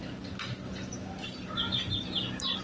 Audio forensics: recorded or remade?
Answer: recorded